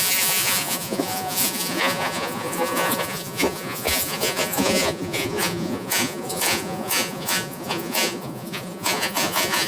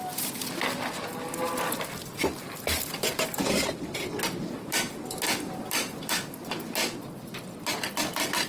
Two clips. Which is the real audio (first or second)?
second